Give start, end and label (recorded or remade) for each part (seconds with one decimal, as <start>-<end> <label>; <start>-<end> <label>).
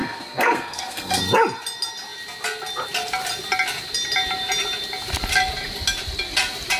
0.0-1.2 remade; 1.2-6.8 recorded